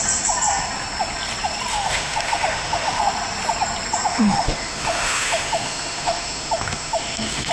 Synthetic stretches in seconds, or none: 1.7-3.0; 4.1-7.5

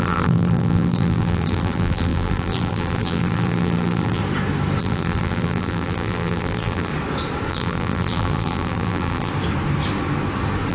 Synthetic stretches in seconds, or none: 0.0-4.2; 4.8-6.9; 7.5-9.3

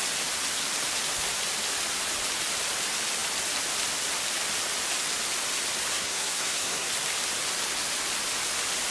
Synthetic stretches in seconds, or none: 5.9-6.9

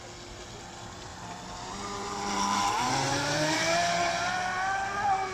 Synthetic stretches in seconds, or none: 1.1-4.3

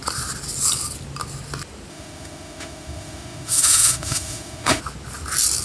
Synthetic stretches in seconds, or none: 1.9-4.8